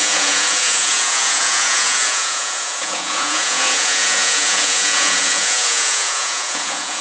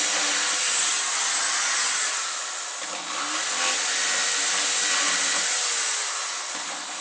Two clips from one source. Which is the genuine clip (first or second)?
second